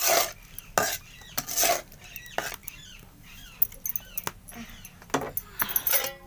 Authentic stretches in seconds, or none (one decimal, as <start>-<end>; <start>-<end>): 0.0-2.6; 3.2-6.3